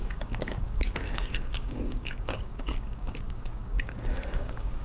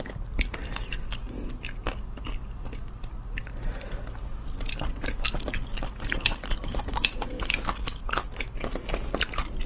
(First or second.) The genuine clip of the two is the second